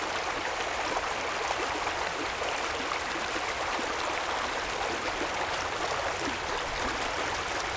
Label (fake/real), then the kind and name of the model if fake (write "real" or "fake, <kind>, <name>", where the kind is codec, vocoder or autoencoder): real